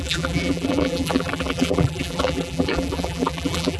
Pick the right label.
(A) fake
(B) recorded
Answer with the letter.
A